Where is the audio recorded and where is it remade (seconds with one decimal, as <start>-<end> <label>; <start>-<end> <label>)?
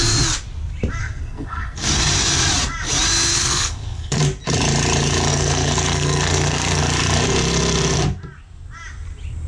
0.0-1.0 recorded; 1.0-1.9 remade; 1.9-3.4 recorded; 3.4-4.2 remade; 4.2-5.3 recorded; 5.3-6.8 remade; 6.8-9.5 recorded